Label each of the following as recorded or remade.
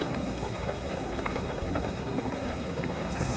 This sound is remade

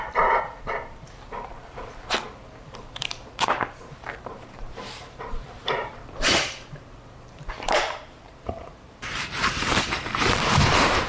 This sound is remade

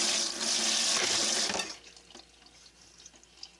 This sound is recorded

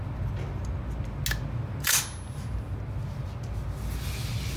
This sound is recorded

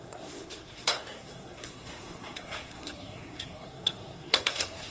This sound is remade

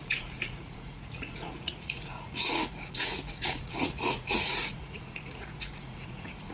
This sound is remade